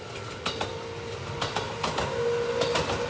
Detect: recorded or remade recorded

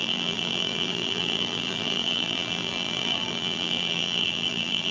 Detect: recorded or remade remade